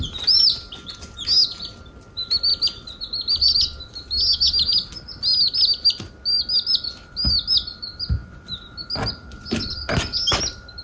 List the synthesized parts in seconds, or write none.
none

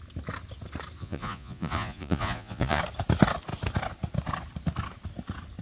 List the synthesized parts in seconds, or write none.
1.0-2.8 (vocoder, Vocos)

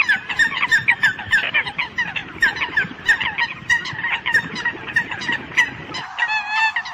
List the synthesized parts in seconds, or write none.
none

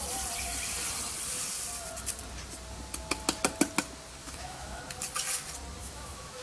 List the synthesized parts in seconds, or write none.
4.2-4.8 (autoencoder, DAC-VAE); 5.8-6.4

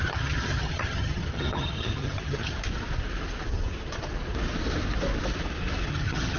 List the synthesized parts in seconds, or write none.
0.0-2.6 (vocoder, HiFi-GAN); 5.9-6.4